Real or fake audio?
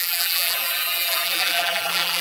fake